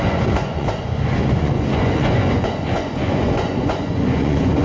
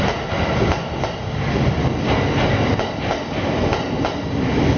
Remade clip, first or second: first